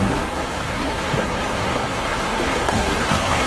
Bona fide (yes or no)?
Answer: no